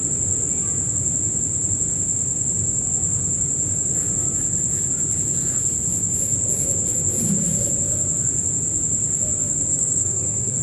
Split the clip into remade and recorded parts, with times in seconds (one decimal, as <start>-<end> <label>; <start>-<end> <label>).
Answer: 0.0-9.7 recorded; 9.7-10.6 remade